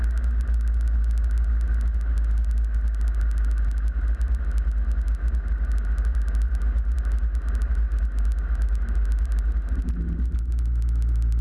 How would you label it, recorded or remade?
recorded